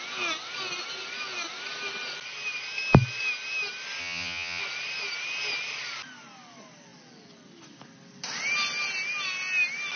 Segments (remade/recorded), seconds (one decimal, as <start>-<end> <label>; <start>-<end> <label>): 0.0-4.0 recorded; 4.0-4.6 remade; 4.6-10.0 recorded